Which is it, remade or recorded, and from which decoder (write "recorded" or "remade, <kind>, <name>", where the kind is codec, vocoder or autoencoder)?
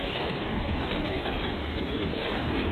remade, codec, DAC